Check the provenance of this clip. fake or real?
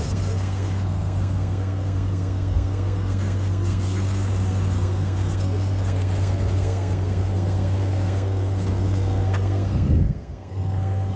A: fake